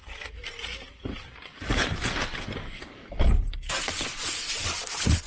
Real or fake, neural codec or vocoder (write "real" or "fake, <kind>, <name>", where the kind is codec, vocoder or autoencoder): real